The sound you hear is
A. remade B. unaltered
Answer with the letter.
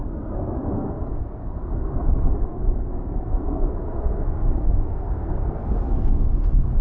A